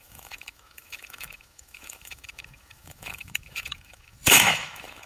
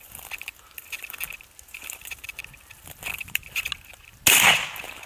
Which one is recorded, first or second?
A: second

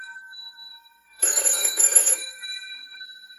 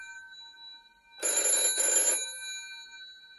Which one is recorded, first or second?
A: second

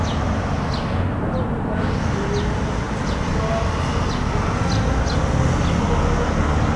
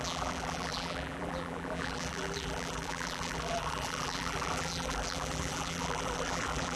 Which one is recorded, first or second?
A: first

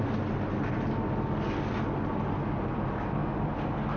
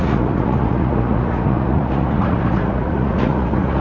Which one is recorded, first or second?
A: first